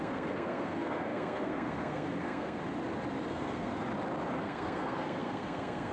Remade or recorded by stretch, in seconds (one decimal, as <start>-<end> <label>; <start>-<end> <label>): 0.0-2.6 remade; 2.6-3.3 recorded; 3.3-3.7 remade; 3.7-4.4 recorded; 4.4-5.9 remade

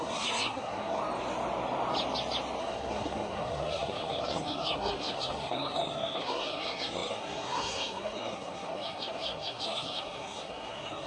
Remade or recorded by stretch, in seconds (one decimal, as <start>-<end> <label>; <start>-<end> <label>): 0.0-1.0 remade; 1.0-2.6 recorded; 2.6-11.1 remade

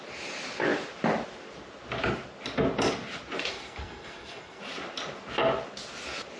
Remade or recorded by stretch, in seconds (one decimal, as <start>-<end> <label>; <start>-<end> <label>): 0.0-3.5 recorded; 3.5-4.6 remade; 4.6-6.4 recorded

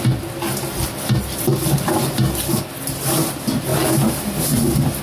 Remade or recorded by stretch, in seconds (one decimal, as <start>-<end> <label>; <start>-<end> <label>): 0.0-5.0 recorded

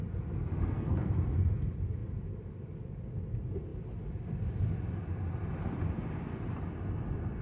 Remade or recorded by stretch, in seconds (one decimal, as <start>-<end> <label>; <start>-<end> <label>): 0.0-0.5 recorded; 0.5-1.1 remade; 1.1-7.4 recorded

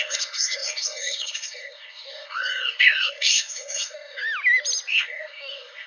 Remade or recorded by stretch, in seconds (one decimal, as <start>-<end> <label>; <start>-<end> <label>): 0.0-4.2 remade; 4.2-4.9 recorded; 4.9-5.9 remade

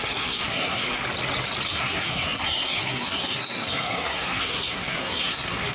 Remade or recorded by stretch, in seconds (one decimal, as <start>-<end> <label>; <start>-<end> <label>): 0.0-1.0 remade; 1.0-1.7 recorded; 1.7-5.7 remade